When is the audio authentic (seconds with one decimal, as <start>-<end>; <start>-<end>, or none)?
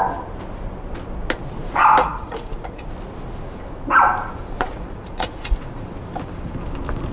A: 0.0-2.0; 2.9-4.4; 5.5-7.1